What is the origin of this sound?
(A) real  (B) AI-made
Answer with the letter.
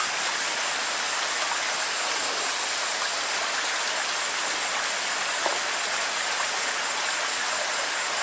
A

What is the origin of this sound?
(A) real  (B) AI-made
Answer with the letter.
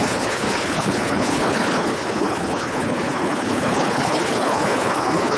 B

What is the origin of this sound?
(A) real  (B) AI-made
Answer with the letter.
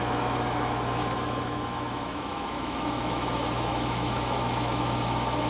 B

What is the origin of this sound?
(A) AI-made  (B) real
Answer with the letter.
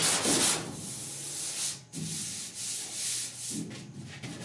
B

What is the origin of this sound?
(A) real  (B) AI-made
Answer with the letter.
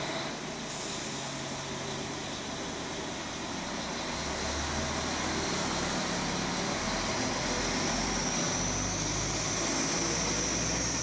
A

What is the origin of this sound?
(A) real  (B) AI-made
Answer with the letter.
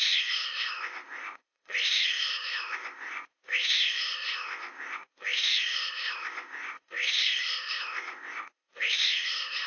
B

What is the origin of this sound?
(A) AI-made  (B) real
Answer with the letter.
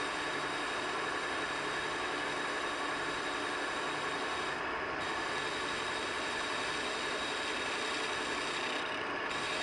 B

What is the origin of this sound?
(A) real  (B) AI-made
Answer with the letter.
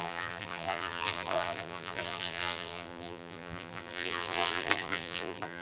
B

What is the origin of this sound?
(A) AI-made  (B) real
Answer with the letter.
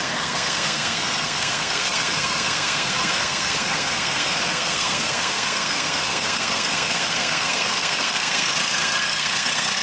A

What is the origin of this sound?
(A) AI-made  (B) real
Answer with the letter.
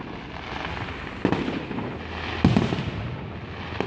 B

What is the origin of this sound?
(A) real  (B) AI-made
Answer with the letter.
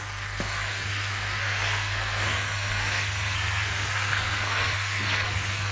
B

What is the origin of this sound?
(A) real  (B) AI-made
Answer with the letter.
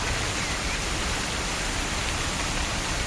A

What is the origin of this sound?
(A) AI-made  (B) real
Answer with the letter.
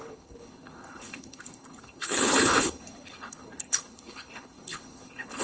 A